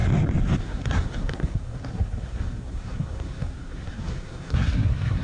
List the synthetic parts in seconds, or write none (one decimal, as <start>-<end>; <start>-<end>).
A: 0.6-5.2